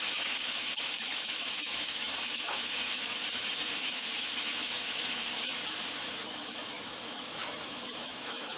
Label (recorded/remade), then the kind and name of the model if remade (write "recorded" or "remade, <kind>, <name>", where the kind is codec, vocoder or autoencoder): remade, autoencoder, DAC-VAE